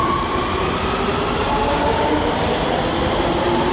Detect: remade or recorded recorded